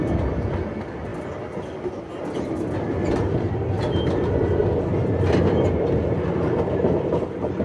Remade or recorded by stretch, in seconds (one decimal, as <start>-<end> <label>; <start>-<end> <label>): 0.0-7.6 recorded